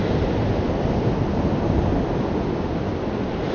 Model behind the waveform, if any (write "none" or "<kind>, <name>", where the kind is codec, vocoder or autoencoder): none